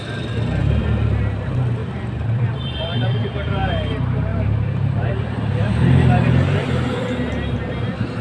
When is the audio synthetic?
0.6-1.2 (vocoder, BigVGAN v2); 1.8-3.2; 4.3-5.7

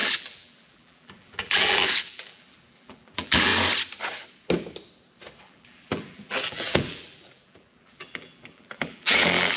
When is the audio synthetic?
0.0-3.5 (vocoder, BigVGAN v2); 5.4-9.6

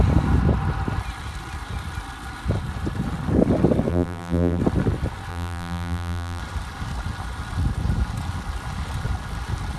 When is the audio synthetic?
3.9-4.6 (vocoder, BigVGAN v2); 5.3-6.4

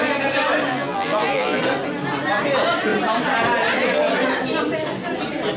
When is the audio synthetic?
0.7-1.6 (vocoder, BigVGAN v2)

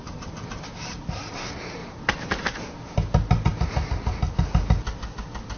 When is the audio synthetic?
0.0-1.8 (vocoder, BigVGAN v2)

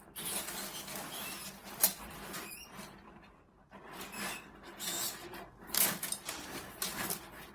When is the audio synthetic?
1.4-3.6 (vocoder, BigVGAN v2)